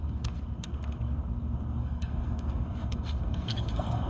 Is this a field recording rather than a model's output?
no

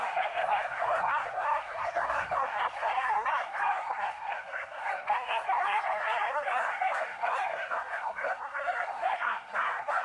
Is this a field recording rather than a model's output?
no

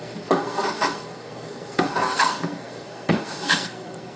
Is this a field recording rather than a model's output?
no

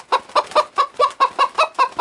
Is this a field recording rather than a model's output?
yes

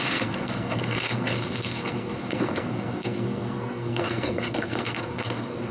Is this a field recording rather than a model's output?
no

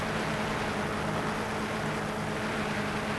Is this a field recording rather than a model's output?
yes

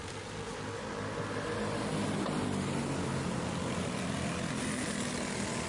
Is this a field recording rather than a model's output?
yes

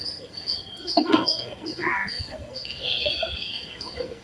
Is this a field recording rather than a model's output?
no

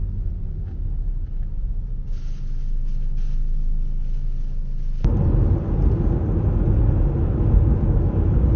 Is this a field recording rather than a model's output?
yes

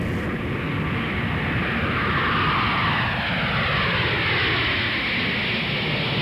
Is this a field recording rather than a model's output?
yes